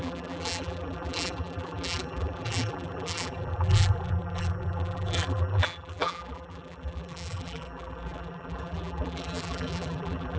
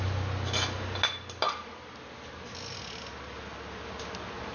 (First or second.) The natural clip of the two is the second